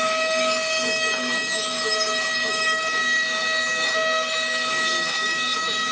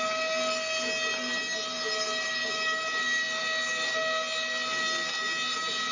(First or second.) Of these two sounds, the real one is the second